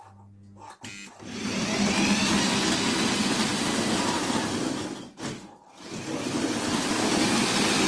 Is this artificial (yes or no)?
no